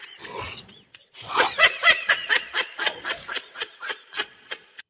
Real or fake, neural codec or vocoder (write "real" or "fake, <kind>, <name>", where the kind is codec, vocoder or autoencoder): fake, vocoder, Vocos